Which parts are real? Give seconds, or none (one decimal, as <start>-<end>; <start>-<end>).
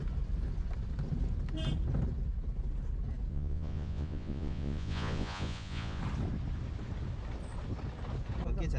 0.0-3.3; 6.0-8.8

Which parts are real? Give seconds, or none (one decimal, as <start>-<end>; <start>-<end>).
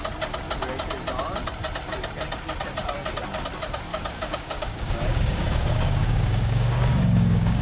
0.0-3.9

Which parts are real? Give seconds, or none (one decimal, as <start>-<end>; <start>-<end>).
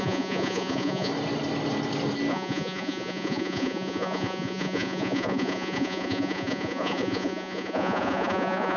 1.1-2.3